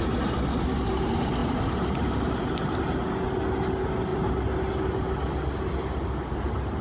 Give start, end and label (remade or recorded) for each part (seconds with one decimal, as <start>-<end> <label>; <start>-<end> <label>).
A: 0.0-1.4 recorded; 1.4-2.8 remade; 2.8-6.8 recorded